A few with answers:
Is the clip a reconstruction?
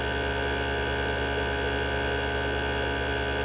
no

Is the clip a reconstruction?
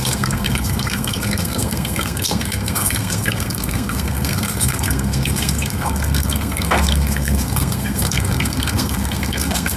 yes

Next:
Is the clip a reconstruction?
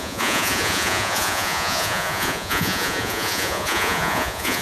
yes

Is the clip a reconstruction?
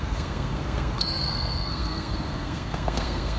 yes